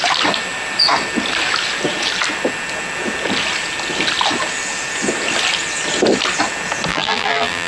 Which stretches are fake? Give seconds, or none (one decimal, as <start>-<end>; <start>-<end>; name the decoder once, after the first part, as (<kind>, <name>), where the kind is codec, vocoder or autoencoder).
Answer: 6.9-7.7 (vocoder, BigVGAN v2)